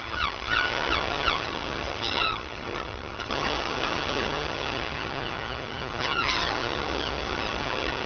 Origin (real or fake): fake